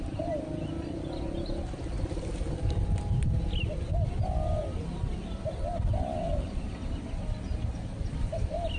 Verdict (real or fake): real